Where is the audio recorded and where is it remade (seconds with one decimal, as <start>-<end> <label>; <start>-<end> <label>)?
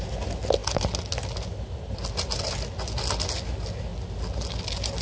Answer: 0.0-5.0 recorded